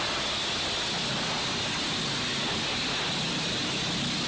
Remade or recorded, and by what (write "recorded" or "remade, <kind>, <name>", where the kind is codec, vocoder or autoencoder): recorded